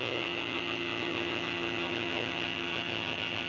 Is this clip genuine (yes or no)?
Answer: no